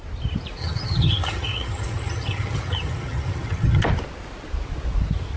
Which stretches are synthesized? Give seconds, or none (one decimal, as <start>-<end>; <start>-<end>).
0.6-3.8